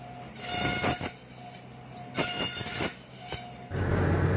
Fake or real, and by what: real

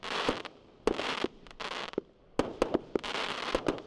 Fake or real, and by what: real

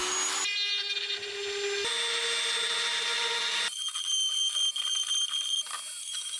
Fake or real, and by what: real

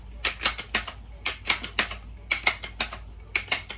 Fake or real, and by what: real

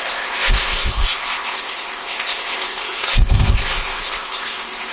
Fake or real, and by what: fake, codec, ZipCodec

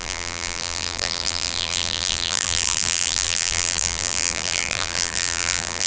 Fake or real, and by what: fake, vocoder, BigVGAN v2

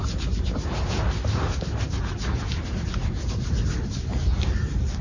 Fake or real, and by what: real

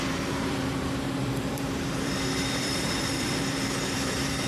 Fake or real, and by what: fake, vocoder, BigVGAN v2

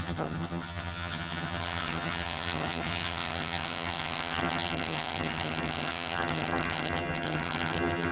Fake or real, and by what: fake, vocoder, HiFi-GAN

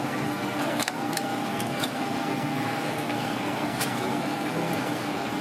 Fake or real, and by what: fake, codec, SNAC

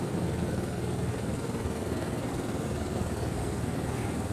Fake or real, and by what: fake, codec, SNAC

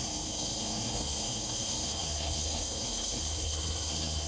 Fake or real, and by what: fake, codec, SNAC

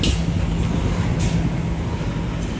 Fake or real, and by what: real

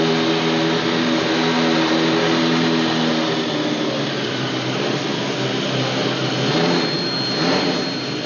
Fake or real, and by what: real